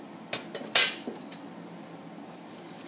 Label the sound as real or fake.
real